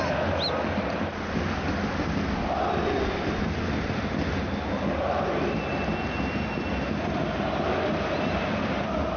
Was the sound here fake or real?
real